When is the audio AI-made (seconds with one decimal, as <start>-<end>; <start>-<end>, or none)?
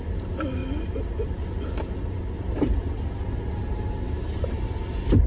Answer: none